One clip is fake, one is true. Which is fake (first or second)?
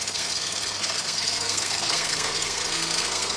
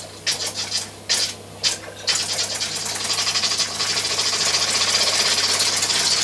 first